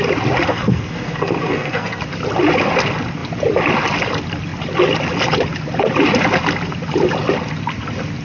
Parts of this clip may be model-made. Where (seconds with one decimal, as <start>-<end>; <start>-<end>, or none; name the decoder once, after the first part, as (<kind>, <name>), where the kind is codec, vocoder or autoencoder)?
0.5-2.0 (codec, SNAC)